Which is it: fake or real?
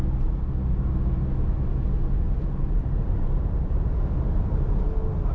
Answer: real